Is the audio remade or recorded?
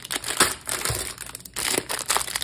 recorded